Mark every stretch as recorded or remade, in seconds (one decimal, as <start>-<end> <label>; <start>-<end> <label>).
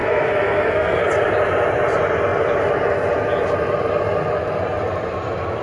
0.0-1.0 remade; 1.0-5.6 recorded